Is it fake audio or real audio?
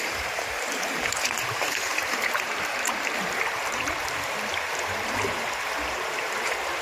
fake